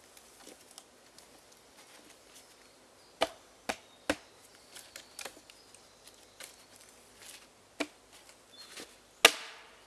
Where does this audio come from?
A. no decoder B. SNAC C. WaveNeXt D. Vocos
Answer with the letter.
A